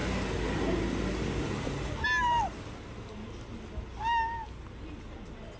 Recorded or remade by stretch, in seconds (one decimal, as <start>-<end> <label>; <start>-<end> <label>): 0.0-5.6 recorded